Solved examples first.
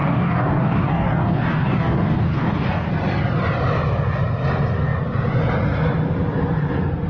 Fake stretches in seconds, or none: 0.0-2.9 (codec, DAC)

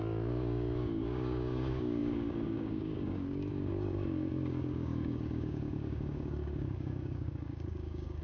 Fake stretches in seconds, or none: 0.0-8.2 (codec, DAC)

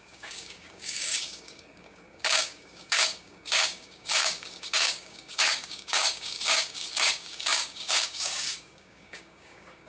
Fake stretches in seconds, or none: 0.0-9.9 (codec, DAC)

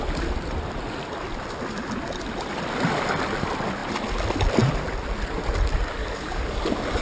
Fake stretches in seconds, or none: 6.0-7.0 (codec, DAC)

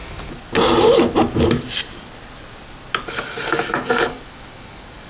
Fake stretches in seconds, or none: 3.1-5.1 (codec, DAC)

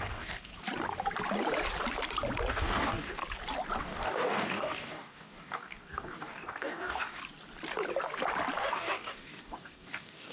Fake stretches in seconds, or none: 0.0-0.5 (codec, DAC); 2.5-3.2; 3.8-7.2; 8.6-10.3